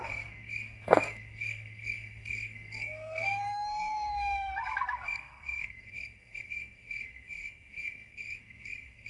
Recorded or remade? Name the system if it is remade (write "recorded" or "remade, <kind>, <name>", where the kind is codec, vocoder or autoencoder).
remade, codec, SNAC